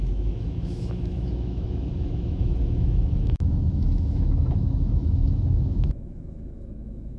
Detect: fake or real fake